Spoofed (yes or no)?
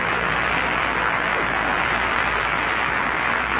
yes